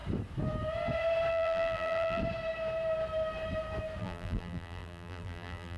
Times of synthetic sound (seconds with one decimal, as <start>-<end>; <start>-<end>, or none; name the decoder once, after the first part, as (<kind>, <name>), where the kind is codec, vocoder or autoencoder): 1.3-2.2 (vocoder, BigVGAN v2); 4.0-5.8

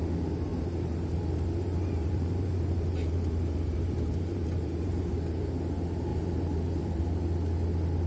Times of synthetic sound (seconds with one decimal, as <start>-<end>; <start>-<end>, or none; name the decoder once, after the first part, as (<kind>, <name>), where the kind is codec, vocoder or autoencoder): 0.5-5.4 (vocoder, BigVGAN v2); 6.1-7.0

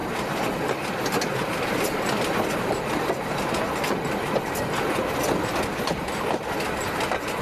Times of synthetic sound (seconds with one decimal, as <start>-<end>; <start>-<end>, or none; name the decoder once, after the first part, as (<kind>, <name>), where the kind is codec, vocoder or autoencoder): none

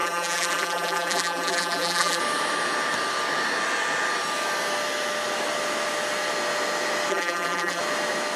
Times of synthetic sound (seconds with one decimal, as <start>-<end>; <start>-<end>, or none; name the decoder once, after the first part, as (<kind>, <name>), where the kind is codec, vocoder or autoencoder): 0.0-2.2 (vocoder, BigVGAN v2); 7.1-7.8

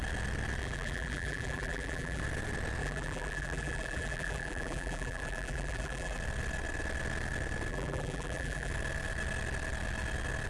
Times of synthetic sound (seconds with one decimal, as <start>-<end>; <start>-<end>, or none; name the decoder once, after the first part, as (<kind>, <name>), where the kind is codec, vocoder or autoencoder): 0.6-2.2 (vocoder, BigVGAN v2); 2.8-6.2; 7.7-8.7